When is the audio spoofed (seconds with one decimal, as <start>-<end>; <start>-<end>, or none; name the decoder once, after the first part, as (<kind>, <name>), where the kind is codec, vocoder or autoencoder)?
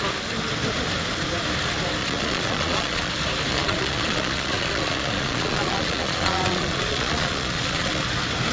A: 2.0-3.1 (vocoder, Vocos); 3.5-8.0